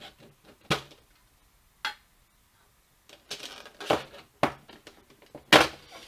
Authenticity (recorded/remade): recorded